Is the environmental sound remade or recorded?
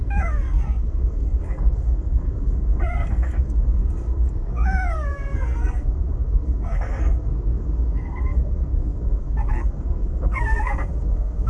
remade